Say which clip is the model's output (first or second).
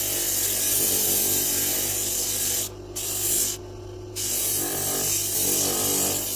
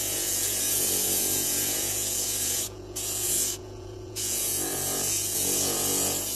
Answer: second